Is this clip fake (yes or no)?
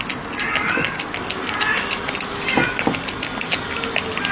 no